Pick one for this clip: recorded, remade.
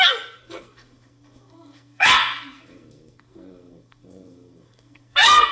remade